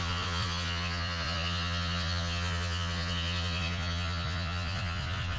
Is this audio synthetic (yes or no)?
yes